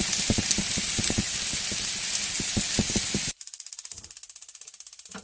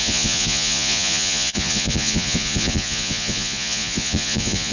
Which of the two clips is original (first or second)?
first